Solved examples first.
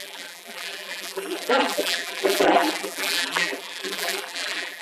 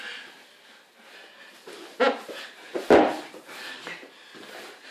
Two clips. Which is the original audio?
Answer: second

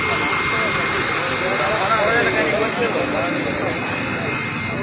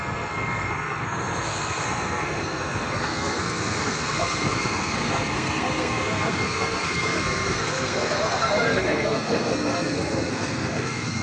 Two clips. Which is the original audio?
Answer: first